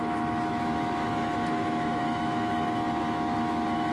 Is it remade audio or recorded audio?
remade